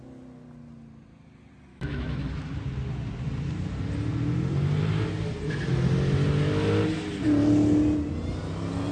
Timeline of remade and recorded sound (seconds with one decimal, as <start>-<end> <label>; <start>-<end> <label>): 0.0-1.7 recorded; 1.7-2.3 remade; 2.3-8.9 recorded

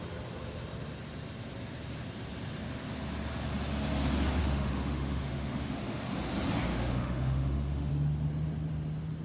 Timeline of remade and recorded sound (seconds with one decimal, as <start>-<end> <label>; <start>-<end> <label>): 0.0-4.4 recorded; 4.4-6.0 remade; 6.0-6.7 recorded; 6.7-7.9 remade; 7.9-9.2 recorded

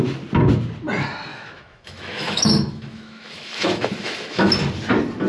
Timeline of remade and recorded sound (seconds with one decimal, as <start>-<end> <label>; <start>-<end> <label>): 0.0-1.3 recorded; 1.3-4.5 remade; 4.5-5.3 recorded